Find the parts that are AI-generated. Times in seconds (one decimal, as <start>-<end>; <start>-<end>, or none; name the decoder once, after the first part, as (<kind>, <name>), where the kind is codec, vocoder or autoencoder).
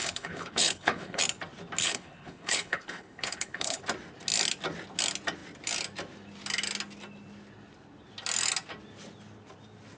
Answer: 0.0-1.2 (codec, HILCodec); 1.8-3.8